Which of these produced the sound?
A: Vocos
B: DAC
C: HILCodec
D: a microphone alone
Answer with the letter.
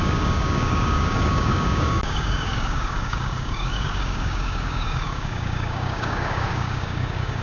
B